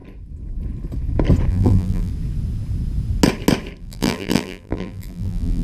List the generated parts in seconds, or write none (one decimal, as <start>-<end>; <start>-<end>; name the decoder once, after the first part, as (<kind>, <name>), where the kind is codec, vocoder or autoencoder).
1.5-2.1 (vocoder, BigVGAN v2); 3.8-5.6